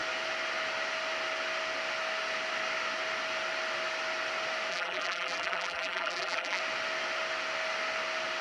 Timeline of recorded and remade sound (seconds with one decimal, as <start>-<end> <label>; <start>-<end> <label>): 0.0-4.7 recorded; 4.7-6.6 remade; 6.6-8.4 recorded